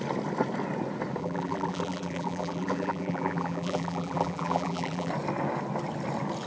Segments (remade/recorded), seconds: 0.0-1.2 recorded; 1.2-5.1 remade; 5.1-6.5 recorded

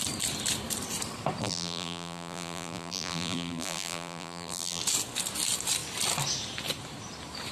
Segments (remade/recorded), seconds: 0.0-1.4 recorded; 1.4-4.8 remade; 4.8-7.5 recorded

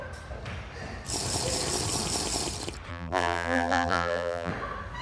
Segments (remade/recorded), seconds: 0.0-2.9 recorded; 2.9-4.5 remade; 4.5-5.0 recorded